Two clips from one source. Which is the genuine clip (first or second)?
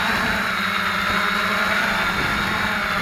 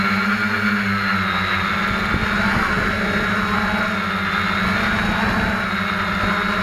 second